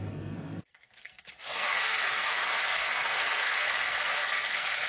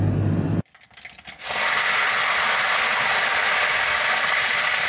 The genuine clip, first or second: second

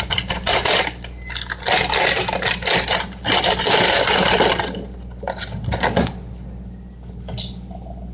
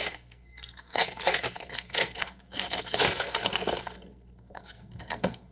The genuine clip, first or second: first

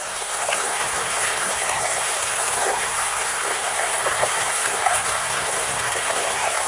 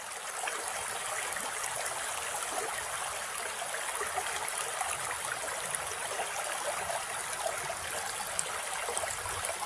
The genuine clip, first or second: second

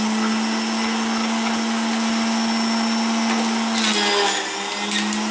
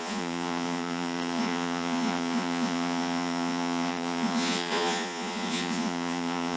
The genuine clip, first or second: first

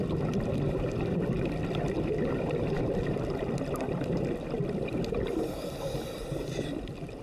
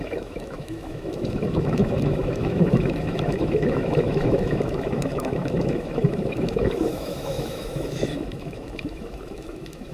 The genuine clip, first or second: first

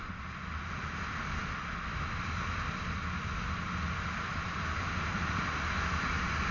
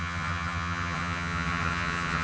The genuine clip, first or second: first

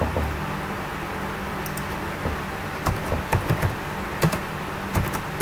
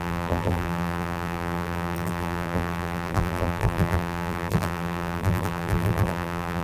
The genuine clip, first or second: first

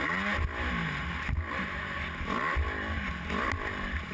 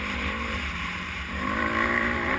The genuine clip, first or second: first